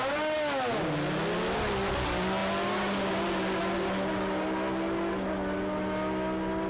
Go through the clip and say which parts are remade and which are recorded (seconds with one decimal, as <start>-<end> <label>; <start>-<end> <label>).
0.0-6.7 recorded